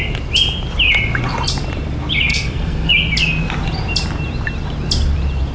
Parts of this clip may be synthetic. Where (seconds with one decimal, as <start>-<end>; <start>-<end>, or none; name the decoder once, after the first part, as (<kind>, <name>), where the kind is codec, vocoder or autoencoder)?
2.3-2.9 (codec, SNAC)